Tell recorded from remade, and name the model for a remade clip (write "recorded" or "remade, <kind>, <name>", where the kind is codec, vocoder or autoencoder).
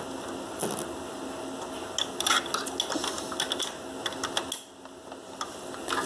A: recorded